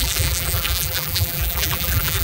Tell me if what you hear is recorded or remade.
remade